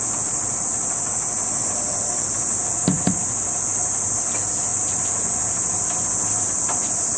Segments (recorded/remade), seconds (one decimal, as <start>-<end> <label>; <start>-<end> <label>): 0.0-7.2 recorded